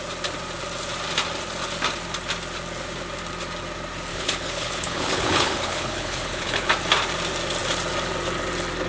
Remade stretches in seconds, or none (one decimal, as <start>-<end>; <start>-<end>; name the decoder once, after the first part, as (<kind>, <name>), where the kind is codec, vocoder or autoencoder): 4.1-6.7 (codec, HILCodec)